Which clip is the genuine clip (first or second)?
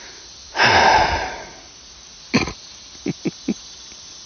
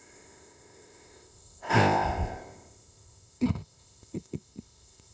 first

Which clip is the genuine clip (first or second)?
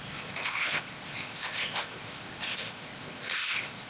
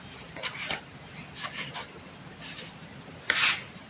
second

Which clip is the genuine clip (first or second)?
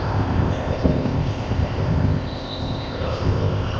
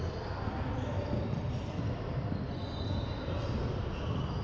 second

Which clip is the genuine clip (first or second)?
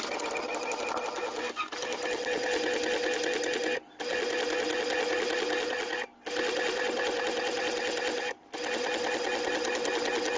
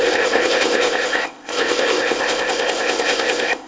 first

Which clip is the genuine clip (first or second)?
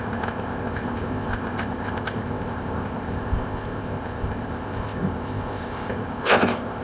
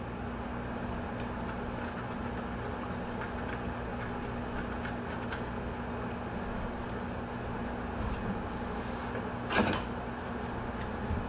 second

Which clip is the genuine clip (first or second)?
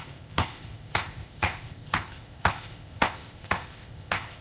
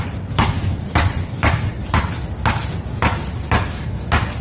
second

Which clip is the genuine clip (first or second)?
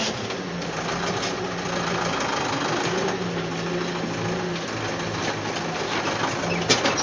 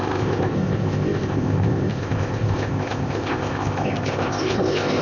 first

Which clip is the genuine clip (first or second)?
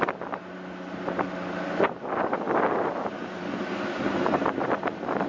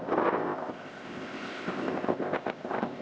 first